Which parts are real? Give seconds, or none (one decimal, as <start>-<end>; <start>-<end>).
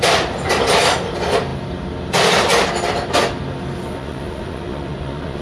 0.0-3.8